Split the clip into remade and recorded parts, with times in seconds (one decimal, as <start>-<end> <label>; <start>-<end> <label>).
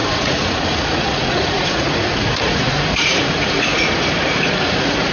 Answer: 0.0-3.7 remade; 3.7-4.3 recorded; 4.3-5.1 remade